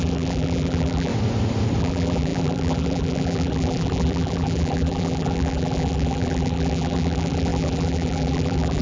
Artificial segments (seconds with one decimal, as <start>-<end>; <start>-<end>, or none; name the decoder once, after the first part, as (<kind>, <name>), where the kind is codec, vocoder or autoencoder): 0.0-1.1 (vocoder, BigVGAN v2); 1.8-8.8